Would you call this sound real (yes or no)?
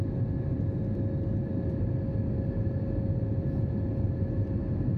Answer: yes